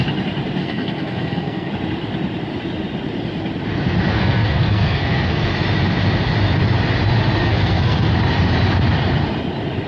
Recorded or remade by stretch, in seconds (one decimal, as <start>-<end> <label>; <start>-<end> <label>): 0.0-0.6 recorded; 0.6-1.7 remade; 1.7-4.1 recorded; 4.1-5.5 remade; 5.5-7.4 recorded; 7.4-8.1 remade; 8.1-9.9 recorded

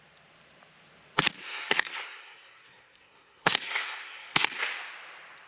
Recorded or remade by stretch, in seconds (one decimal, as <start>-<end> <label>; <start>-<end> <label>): 0.0-1.4 recorded; 1.4-4.6 remade; 4.6-5.5 recorded

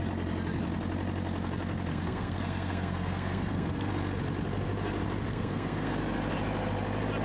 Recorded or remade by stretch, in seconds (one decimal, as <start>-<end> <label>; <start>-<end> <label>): 0.0-1.9 recorded; 1.9-3.9 remade; 3.9-5.3 recorded; 5.3-5.9 remade; 5.9-7.2 recorded

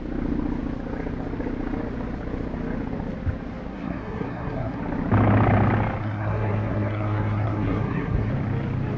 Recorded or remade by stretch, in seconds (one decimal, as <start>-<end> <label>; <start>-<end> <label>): 0.0-3.7 recorded; 3.7-4.8 remade; 4.8-6.0 recorded; 6.0-8.3 remade; 8.3-9.0 recorded